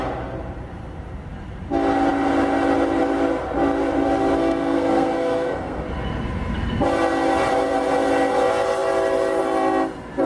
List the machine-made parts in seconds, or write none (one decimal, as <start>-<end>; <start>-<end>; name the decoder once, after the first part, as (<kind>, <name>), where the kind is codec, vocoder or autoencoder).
4.4-5.8 (codec, SNAC)